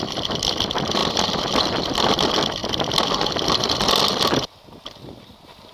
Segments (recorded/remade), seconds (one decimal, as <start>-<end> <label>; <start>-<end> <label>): 0.0-1.0 recorded; 1.0-2.1 remade; 2.1-5.7 recorded